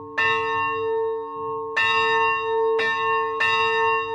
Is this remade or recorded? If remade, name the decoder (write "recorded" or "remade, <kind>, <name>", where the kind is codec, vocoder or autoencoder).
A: recorded